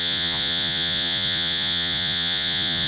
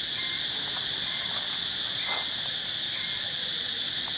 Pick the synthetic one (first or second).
first